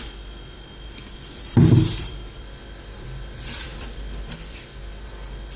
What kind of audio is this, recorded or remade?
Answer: remade